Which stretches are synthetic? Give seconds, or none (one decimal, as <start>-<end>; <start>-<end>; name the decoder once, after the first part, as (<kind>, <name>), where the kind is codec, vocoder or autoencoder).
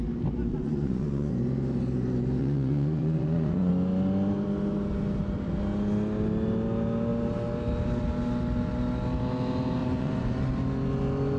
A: 0.5-1.3 (vocoder, Vocos); 2.4-3.7; 9.8-10.5